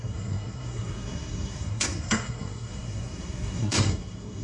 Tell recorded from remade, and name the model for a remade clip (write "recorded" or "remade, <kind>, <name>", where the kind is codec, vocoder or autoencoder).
remade, codec, SNAC